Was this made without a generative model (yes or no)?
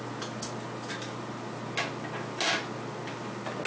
yes